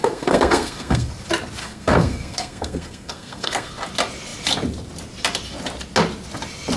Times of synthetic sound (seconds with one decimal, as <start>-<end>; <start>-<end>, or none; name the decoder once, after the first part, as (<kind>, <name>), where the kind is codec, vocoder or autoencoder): 0.0-1.1 (codec, SNAC); 1.6-3.7